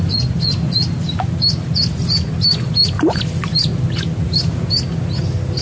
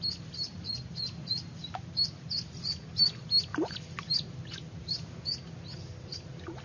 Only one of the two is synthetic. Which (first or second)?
second